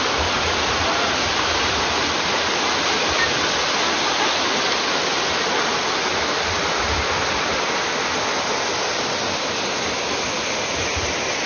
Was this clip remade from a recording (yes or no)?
no